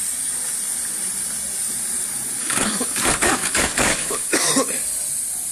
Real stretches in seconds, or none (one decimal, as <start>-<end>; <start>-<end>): 0.0-2.4; 4.5-5.5